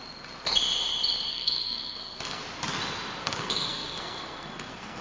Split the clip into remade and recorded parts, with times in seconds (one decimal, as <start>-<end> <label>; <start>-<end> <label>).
0.0-1.3 recorded; 1.3-2.4 remade; 2.4-3.2 recorded; 3.2-5.0 remade